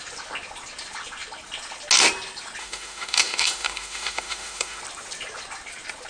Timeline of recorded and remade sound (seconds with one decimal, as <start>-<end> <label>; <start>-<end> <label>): 0.0-2.6 recorded; 2.6-4.8 remade; 4.8-6.1 recorded